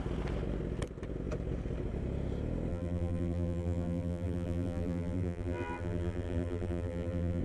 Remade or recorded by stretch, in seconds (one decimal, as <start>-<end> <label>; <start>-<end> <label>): 0.0-2.7 recorded; 2.7-7.4 remade